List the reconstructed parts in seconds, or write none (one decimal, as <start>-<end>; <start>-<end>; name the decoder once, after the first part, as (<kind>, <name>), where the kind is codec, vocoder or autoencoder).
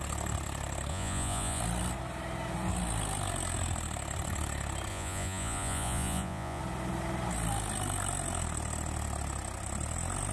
0.9-1.6 (vocoder, Vocos); 4.9-6.6